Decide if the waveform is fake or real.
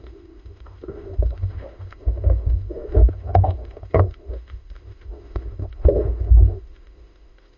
fake